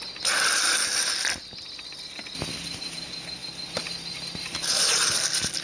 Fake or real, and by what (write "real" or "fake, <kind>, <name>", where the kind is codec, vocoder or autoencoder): real